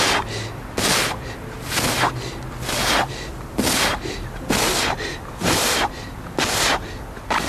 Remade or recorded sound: recorded